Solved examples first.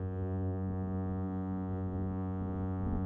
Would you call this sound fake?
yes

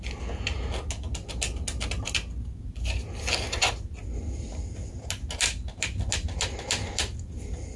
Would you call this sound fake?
no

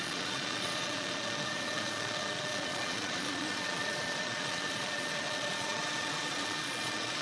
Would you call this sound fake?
yes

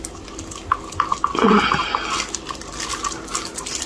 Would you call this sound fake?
no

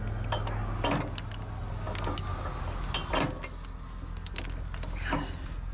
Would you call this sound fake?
no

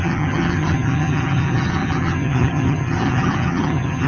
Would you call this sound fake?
yes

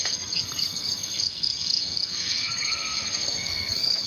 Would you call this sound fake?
yes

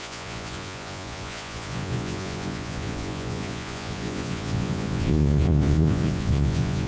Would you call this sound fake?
yes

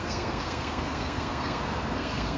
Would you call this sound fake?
yes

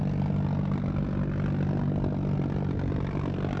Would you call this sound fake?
no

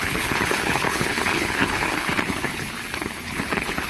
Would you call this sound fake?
yes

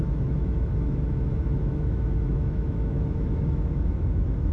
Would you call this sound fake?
yes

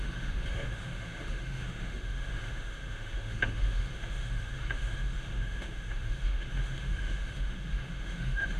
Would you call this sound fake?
yes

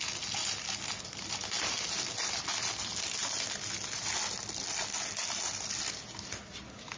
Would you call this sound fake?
no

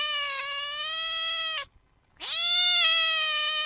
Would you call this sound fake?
no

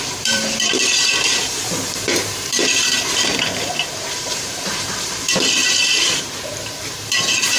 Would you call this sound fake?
yes